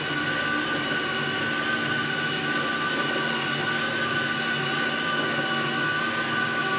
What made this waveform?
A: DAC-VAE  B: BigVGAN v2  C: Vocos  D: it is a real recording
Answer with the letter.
D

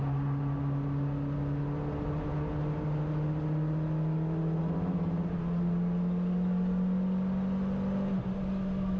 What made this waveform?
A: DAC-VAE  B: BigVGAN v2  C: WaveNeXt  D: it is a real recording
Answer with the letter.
D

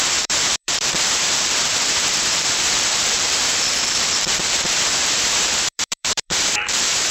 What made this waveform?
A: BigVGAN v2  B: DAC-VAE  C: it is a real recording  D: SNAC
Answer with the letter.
A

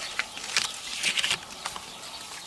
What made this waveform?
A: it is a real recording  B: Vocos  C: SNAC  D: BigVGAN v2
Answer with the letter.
A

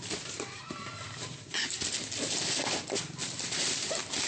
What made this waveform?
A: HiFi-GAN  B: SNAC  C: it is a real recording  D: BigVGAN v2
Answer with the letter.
C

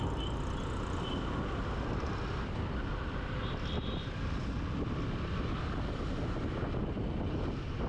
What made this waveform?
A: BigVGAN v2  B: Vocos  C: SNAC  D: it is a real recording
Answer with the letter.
D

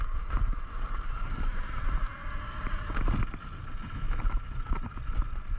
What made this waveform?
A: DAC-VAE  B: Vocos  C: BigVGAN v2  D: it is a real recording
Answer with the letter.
D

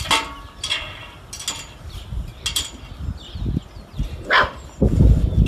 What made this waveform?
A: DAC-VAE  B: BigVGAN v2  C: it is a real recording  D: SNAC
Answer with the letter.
C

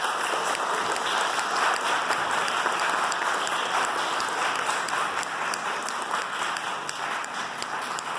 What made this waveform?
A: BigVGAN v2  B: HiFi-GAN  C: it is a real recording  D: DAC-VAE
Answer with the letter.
A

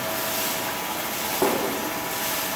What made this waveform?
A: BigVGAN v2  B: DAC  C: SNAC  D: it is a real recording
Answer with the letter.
D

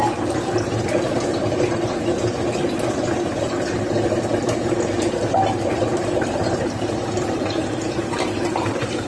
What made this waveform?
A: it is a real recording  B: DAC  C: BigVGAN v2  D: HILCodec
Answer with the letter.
C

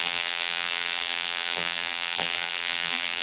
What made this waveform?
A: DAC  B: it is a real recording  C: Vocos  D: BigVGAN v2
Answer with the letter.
D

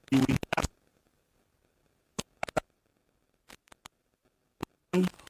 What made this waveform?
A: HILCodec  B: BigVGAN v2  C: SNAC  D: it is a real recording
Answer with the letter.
B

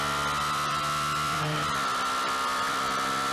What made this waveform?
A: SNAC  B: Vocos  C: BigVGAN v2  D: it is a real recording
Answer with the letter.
C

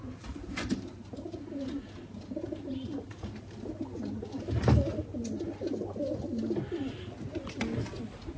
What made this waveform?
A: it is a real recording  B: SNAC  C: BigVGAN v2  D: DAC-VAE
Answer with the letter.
A